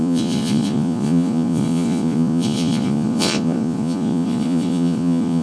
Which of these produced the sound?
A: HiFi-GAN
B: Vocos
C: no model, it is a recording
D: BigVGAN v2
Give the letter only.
B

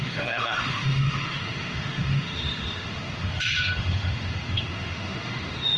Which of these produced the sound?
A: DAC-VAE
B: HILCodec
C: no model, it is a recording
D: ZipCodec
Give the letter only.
A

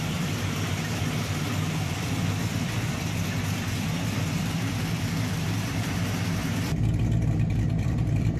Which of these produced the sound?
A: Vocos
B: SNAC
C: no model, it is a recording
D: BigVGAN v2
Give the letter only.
D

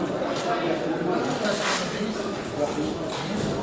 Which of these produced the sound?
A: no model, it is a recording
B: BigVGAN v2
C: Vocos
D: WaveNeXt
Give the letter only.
A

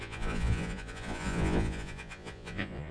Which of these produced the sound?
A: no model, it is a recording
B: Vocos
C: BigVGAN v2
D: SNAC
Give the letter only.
B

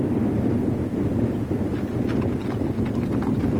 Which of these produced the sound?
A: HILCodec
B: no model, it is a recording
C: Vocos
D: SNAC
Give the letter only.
B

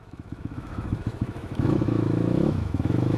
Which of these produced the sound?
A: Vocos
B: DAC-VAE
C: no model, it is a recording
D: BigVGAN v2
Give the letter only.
B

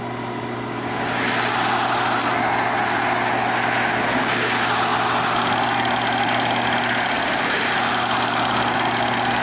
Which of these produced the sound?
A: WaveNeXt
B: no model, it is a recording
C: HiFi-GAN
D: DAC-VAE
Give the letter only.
B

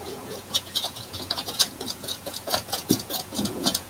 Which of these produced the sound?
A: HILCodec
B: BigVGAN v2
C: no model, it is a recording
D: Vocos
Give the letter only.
D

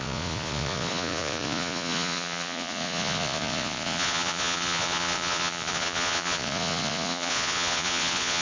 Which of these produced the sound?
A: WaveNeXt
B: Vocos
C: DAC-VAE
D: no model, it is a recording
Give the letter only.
B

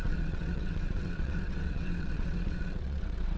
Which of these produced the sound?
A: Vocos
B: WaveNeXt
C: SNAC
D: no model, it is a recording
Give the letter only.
B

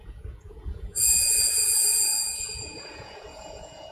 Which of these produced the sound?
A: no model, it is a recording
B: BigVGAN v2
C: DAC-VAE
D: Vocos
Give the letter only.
D